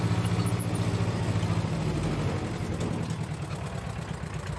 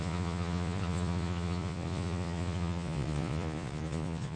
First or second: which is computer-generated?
second